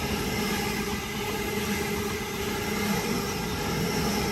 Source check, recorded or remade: recorded